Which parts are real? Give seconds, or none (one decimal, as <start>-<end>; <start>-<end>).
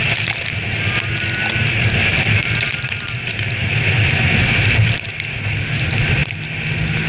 0.0-2.1; 3.7-7.1